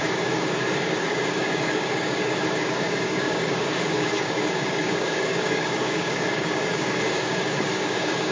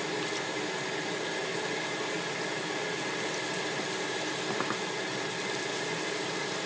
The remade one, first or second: first